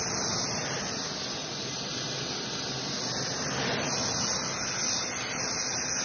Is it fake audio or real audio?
real